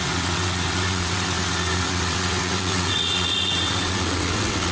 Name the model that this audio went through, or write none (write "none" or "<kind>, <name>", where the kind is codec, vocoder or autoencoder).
vocoder, WaveNeXt